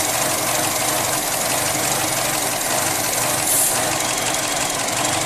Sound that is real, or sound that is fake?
real